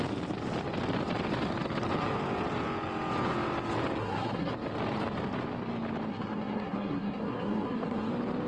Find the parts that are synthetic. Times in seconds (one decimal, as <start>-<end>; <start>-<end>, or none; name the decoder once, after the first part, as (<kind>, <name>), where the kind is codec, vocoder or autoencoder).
4.0-4.5 (codec, SNAC); 6.1-8.1